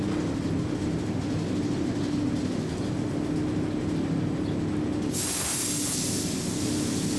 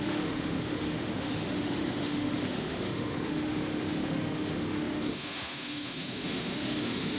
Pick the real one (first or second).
first